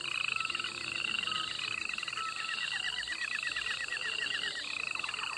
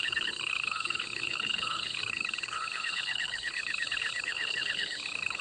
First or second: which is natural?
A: first